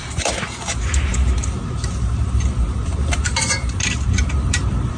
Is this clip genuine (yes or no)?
no